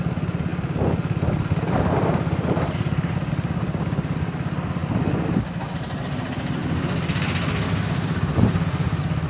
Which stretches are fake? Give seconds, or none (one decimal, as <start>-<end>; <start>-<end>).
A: none